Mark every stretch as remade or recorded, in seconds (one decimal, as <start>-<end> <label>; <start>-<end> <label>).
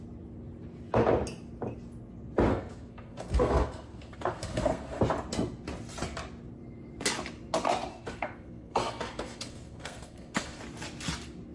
0.0-2.5 recorded; 2.5-5.0 remade; 5.0-7.9 recorded; 7.9-10.6 remade; 10.6-11.5 recorded